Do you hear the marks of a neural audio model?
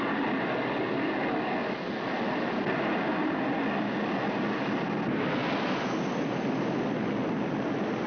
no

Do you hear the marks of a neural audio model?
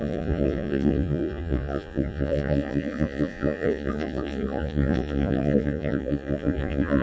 yes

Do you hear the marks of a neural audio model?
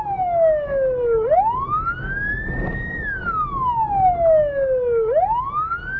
no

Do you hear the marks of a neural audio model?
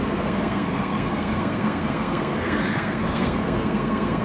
yes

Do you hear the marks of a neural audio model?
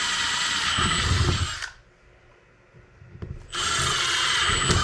no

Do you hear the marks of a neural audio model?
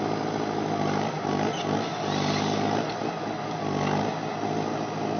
no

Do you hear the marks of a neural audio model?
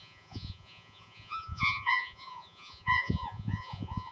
yes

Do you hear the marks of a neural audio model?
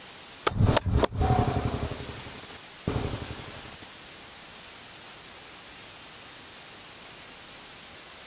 no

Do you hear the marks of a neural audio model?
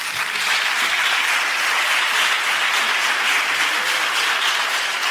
no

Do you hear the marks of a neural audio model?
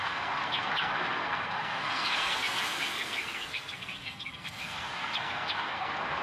yes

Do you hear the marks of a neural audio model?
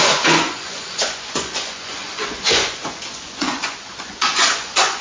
yes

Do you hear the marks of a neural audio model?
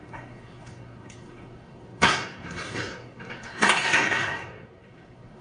yes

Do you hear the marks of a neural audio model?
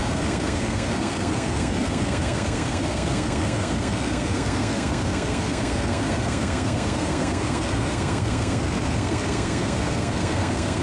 yes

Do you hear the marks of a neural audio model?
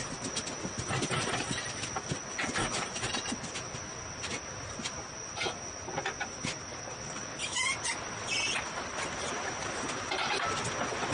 no